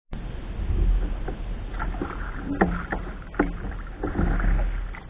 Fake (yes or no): no